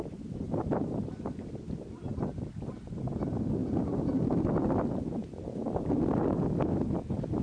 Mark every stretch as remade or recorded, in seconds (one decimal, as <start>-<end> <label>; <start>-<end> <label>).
0.0-7.4 recorded